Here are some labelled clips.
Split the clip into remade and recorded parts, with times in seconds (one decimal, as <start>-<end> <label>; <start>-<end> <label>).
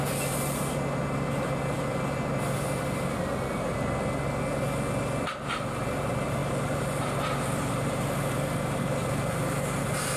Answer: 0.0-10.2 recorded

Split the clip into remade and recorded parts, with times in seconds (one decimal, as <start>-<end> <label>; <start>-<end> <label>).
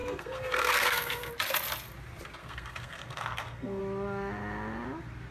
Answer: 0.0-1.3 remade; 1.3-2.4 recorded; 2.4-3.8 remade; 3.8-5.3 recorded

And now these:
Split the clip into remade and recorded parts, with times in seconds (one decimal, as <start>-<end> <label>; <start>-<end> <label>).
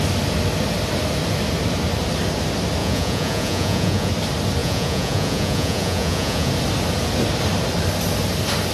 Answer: 0.0-2.8 recorded; 2.8-4.1 remade; 4.1-4.6 recorded; 4.6-6.5 remade; 6.5-8.7 recorded